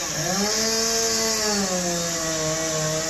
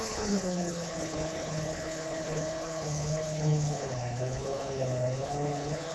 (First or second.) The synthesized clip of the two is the second